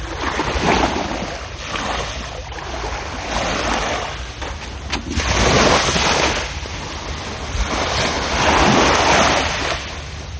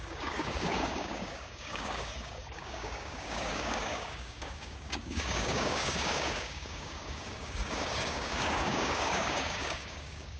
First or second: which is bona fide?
first